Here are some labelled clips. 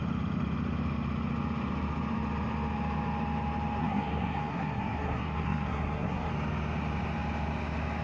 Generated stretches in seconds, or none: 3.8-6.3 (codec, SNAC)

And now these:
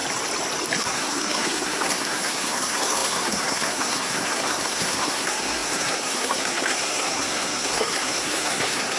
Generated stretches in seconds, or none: 0.8-9.0 (codec, SNAC)